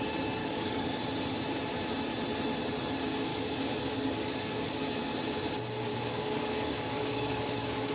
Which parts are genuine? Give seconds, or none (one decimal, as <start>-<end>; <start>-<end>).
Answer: 0.0-0.4; 1.0-3.3; 4.8-5.9